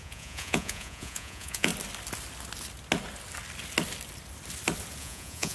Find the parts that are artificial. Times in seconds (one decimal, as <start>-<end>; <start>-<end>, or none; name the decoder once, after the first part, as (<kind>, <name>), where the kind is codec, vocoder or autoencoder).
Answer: 0.0-1.7 (vocoder, Vocos); 5.0-5.5